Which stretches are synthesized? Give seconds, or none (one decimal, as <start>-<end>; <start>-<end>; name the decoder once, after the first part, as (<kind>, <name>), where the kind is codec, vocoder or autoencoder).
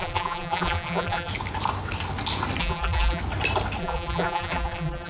0.0-1.3 (vocoder, BigVGAN v2); 2.6-3.2; 3.8-5.1